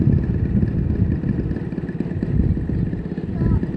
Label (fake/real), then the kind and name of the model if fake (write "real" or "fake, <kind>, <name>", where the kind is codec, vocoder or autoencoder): real